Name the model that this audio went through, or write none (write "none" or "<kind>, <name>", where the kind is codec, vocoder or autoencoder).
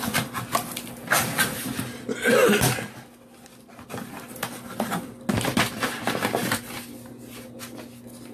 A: none